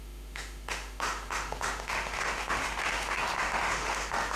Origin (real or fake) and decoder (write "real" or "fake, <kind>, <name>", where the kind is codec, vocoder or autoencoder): fake, autoencoder, DAC-VAE